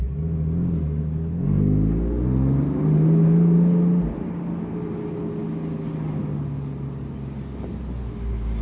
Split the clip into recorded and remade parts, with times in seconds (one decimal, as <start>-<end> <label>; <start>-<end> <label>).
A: 0.0-8.6 recorded